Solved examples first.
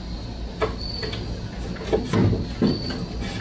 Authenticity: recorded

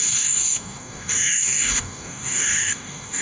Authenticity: remade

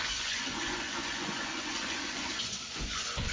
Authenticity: remade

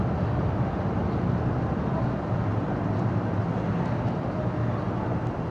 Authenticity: recorded